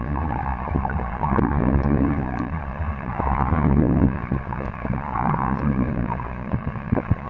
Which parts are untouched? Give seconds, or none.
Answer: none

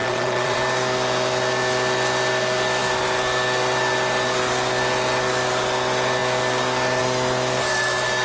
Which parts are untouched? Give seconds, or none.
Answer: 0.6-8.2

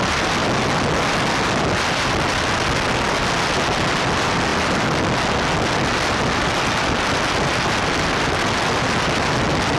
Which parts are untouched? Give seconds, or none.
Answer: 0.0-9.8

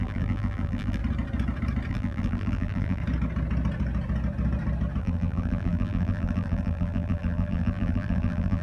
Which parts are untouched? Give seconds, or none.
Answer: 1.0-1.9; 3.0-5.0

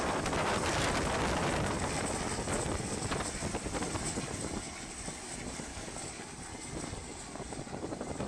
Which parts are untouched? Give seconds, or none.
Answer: 0.0-5.7; 6.2-8.3